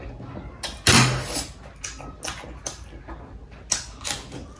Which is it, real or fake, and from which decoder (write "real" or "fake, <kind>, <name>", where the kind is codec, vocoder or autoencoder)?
real